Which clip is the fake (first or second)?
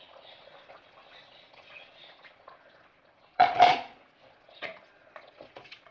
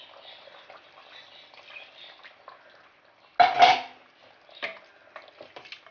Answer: first